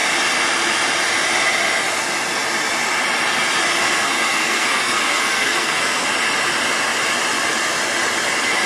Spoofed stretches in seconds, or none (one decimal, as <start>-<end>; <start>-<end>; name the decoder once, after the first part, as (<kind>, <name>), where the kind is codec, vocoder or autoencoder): 3.8-6.1 (codec, SNAC)